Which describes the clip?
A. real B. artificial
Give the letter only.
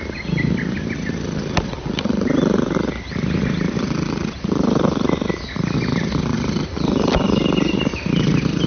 A